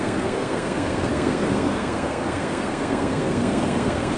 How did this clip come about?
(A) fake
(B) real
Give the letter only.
A